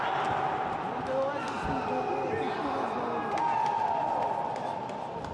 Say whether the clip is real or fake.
real